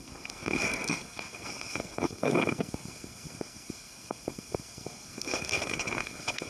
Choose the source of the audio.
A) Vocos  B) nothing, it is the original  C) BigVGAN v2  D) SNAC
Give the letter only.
D